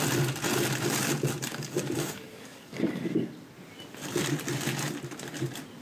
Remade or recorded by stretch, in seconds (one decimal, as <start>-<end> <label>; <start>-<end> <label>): 0.0-1.5 recorded; 1.5-3.3 remade; 3.3-5.8 recorded